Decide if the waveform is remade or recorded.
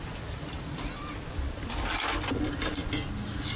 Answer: recorded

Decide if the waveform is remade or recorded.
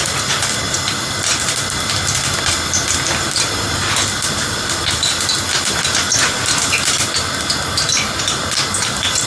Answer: recorded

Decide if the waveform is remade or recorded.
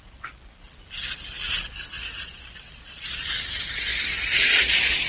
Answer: recorded